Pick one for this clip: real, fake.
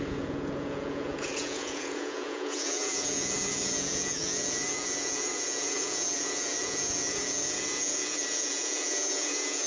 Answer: fake